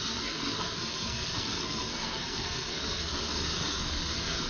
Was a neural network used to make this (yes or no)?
yes